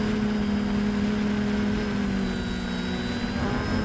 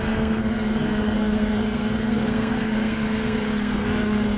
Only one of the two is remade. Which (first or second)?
second